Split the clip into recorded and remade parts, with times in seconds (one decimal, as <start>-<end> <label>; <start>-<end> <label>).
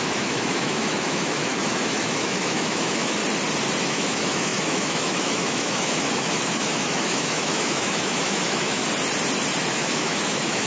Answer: 0.0-3.2 remade; 3.2-3.8 recorded; 3.8-8.8 remade; 8.8-9.7 recorded; 9.7-10.7 remade